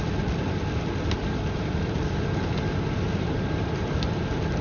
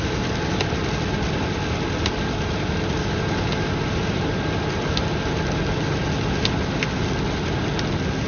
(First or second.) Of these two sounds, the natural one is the second